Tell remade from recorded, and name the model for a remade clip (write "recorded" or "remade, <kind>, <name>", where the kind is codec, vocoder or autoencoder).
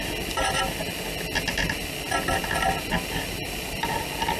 recorded